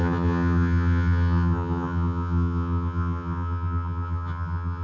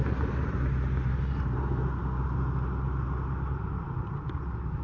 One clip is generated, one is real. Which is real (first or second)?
second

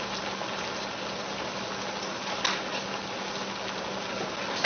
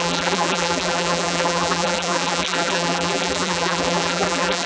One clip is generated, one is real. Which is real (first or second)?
first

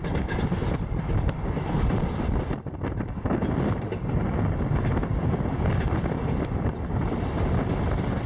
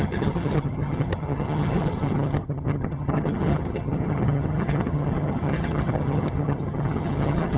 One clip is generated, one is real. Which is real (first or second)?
first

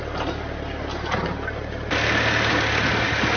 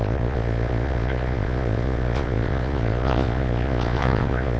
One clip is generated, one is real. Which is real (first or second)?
first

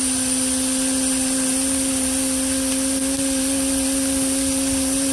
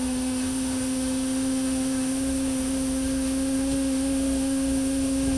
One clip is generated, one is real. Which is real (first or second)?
first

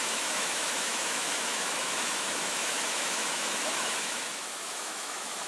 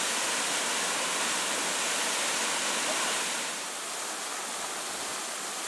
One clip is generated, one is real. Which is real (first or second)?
second